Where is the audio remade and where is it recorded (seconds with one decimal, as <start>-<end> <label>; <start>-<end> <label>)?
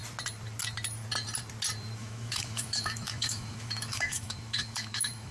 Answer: 0.0-2.0 recorded; 2.0-5.3 remade